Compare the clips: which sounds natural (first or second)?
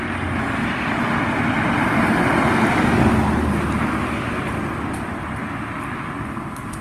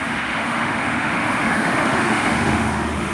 first